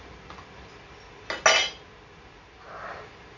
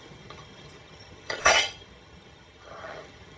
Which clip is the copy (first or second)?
second